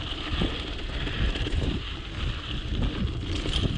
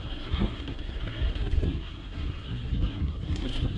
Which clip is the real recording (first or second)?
first